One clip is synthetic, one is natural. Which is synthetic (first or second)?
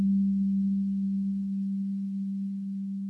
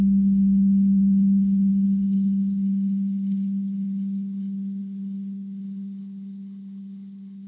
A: second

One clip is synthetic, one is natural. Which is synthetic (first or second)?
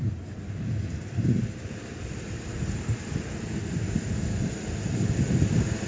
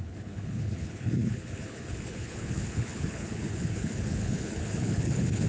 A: second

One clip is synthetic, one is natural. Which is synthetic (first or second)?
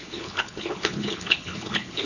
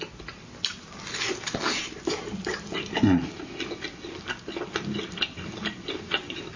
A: first